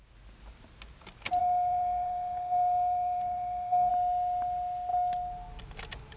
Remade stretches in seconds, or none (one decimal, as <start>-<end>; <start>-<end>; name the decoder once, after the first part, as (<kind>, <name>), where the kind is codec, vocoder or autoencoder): 1.4-3.9 (codec, SNAC)